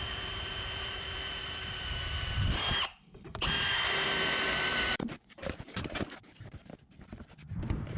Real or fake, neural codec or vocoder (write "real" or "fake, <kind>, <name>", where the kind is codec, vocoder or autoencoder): fake, vocoder, BigVGAN v2